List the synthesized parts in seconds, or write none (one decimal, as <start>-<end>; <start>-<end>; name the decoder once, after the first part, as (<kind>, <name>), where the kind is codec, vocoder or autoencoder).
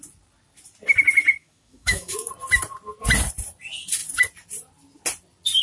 1.4-2.3 (autoencoder, DAC-VAE)